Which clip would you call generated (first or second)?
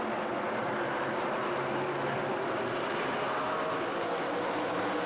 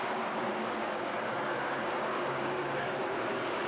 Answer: second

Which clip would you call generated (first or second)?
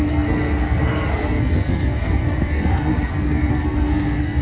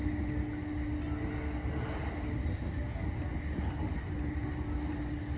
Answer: first